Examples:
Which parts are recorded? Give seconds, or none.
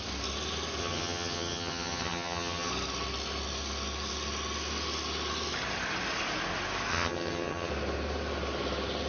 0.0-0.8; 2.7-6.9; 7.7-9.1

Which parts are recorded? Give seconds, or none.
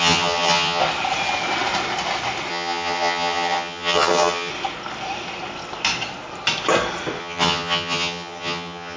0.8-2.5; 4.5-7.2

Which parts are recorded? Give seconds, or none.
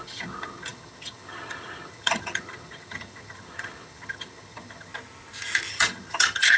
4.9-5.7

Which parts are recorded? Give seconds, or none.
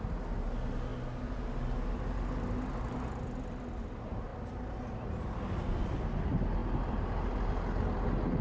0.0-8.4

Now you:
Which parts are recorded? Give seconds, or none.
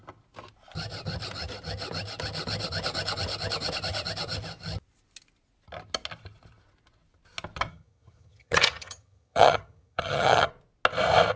0.0-7.7; 10.5-11.4